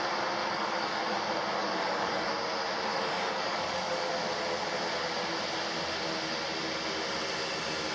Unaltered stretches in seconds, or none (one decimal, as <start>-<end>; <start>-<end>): 0.0-0.4; 1.2-1.6; 2.3-2.9; 4.1-7.9